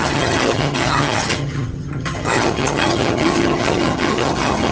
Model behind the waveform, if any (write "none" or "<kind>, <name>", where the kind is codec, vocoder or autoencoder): vocoder, HiFi-GAN